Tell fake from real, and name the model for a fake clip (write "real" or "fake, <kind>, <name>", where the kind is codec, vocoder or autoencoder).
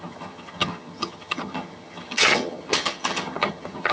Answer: fake, vocoder, HiFi-GAN